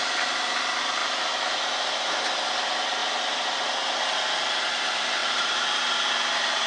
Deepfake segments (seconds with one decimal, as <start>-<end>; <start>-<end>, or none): 1.0-2.1; 5.2-5.7